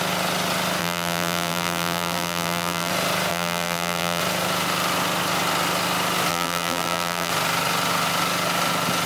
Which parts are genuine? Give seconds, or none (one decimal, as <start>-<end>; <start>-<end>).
0.0-0.8; 2.9-3.3; 4.2-6.3; 7.3-9.1